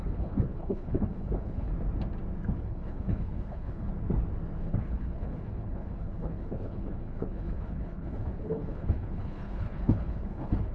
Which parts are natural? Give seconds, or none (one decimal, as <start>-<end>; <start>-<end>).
1.7-2.6; 3.9-4.6